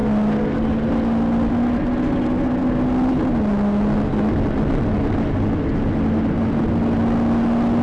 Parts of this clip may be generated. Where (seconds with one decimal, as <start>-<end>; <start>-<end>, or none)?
none